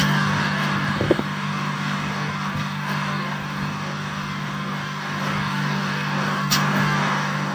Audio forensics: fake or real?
fake